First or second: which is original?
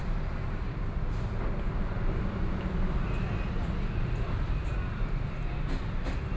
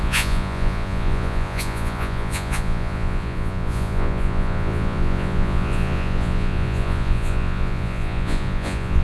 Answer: first